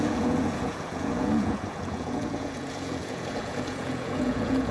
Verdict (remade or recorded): remade